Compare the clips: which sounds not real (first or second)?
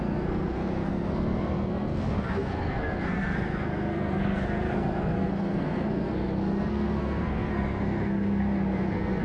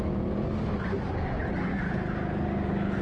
first